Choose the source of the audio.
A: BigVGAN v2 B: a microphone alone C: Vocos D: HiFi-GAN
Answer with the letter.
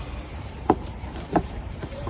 A